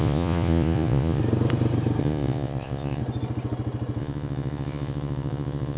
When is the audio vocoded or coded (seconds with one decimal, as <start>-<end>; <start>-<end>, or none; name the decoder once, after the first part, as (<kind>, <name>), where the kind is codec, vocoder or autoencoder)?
0.0-1.2 (vocoder, Vocos); 2.0-3.0; 4.0-5.8